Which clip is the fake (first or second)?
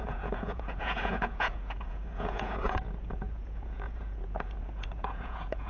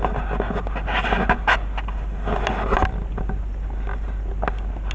first